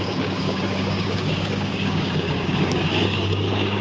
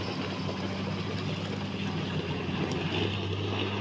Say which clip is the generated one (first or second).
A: first